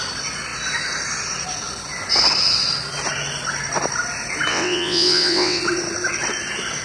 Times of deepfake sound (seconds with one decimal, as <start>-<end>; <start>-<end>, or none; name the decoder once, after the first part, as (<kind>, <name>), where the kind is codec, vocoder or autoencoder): 4.5-5.6 (vocoder, WaveNeXt)